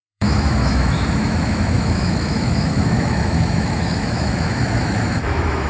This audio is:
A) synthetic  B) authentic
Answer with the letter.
A